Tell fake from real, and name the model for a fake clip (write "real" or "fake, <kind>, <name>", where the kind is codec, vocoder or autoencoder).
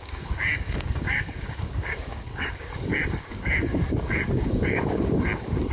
fake, codec, DAC